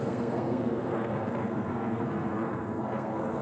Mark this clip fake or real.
fake